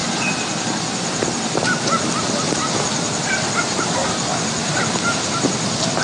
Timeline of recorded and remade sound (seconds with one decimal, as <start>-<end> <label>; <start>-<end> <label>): 0.0-6.0 recorded